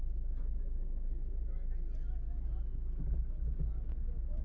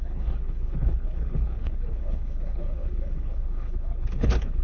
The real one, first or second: first